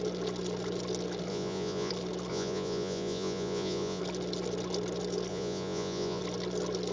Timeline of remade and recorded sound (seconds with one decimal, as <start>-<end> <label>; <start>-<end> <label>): 0.0-1.3 recorded; 1.3-1.9 remade; 1.9-2.3 recorded; 2.3-4.0 remade; 4.0-5.3 recorded; 5.3-6.2 remade; 6.2-6.9 recorded